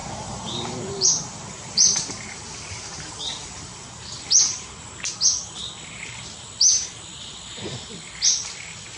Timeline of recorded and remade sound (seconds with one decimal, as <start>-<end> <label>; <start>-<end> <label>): 0.0-3.5 remade; 3.5-9.0 recorded